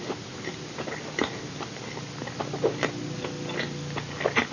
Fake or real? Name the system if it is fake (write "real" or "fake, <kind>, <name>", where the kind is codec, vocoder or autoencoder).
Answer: real